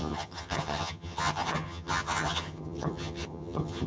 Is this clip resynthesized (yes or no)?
yes